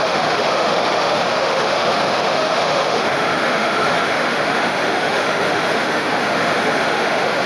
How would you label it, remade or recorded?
remade